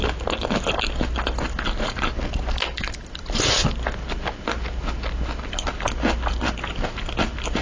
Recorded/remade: recorded